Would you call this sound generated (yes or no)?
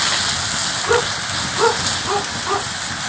no